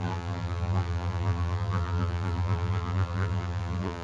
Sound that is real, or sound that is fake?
fake